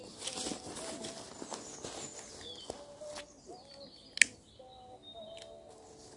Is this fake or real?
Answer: real